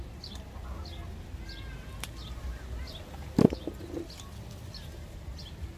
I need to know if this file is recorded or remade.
recorded